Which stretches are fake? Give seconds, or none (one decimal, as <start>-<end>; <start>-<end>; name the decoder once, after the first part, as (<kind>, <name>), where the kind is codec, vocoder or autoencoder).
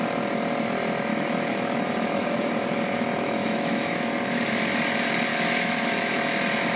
1.1-4.6 (autoencoder, DAC-VAE); 5.3-6.1